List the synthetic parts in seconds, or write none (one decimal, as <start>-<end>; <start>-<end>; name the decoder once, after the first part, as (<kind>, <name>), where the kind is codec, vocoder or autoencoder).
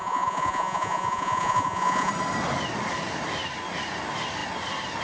0.0-2.1 (vocoder, Vocos)